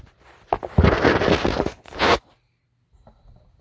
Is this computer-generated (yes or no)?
no